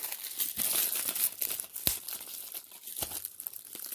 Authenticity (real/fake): real